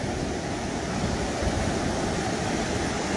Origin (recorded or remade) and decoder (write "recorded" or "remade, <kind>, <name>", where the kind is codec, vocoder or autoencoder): recorded